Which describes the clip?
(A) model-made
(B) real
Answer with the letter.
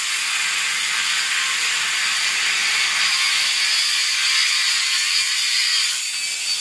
B